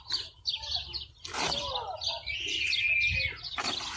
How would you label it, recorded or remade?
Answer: recorded